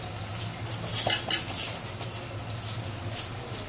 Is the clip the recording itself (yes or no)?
yes